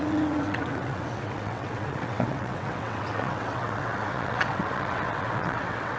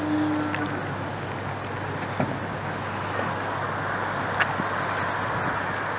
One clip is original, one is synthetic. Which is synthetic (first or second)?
first